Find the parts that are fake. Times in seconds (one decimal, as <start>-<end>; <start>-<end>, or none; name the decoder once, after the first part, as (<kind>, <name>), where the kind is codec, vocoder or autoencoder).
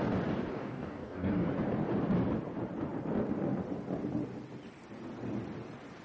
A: 0.5-1.5 (codec, DAC)